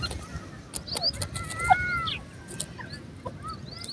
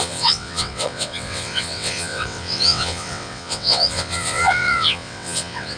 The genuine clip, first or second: first